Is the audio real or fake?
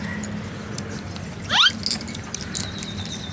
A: real